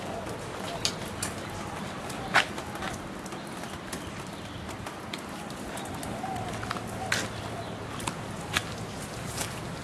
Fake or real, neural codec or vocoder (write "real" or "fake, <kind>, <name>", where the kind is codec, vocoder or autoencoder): real